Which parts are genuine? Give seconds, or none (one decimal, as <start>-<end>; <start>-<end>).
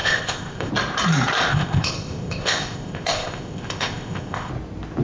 0.7-1.5; 4.5-5.0